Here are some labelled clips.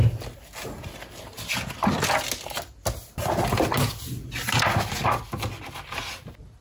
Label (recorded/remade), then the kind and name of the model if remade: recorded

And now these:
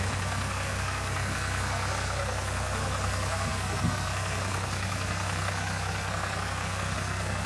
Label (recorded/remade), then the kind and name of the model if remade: remade, codec, SNAC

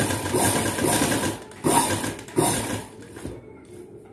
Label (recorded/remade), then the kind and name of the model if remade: recorded